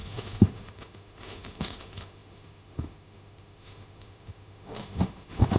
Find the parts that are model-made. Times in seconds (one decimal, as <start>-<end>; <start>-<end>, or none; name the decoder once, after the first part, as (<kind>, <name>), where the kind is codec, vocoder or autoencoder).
0.0-5.6 (autoencoder, DAC-VAE)